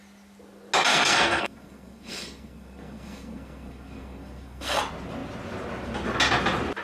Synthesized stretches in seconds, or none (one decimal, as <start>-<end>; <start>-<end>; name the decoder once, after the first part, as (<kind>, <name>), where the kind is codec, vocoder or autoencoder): 0.9-4.8 (codec, SNAC)